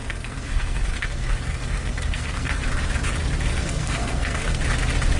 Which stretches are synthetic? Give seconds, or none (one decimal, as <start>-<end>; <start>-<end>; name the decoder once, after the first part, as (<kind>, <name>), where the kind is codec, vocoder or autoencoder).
0.0-2.6 (codec, SNAC); 3.5-4.6